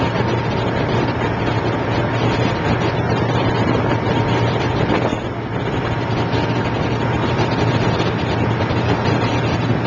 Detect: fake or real real